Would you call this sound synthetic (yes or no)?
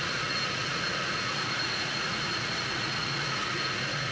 yes